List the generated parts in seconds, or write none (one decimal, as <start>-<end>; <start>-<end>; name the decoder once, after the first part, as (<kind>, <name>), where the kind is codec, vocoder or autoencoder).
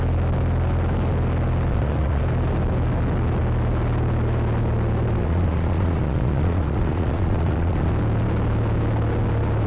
1.7-2.2 (vocoder, Vocos); 5.2-7.9